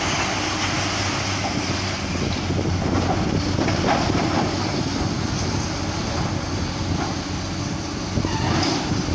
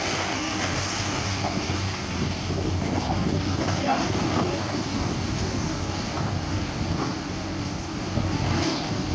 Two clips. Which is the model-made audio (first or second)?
second